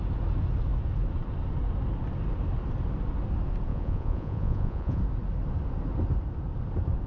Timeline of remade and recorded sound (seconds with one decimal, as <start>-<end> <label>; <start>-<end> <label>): 0.0-3.7 recorded; 3.7-5.0 remade; 5.0-7.1 recorded